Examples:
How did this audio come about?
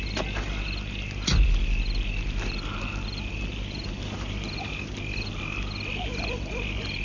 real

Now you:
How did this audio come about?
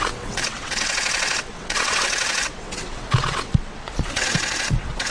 fake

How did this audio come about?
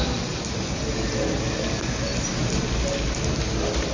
real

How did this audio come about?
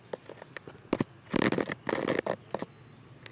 real